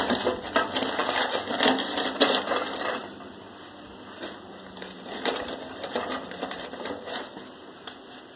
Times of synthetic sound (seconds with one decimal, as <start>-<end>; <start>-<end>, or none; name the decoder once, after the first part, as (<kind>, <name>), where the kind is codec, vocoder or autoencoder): none